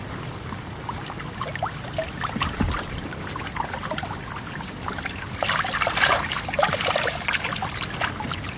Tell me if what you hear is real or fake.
real